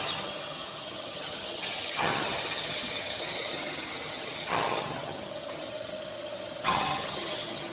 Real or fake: fake